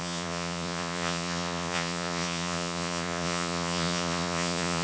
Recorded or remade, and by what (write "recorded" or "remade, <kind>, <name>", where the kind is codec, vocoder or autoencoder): remade, vocoder, Vocos